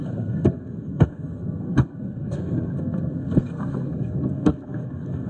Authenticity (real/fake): fake